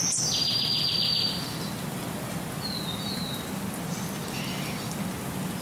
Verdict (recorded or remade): recorded